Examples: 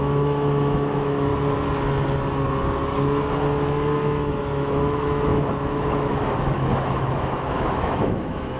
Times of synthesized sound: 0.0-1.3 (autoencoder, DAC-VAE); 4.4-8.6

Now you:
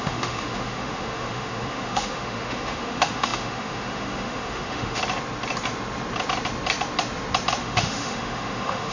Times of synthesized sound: 0.0-5.0 (autoencoder, DAC-VAE); 7.6-8.9

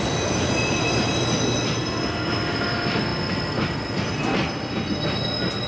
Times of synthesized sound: none